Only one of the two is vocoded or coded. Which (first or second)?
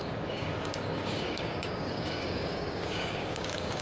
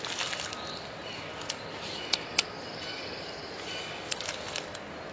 first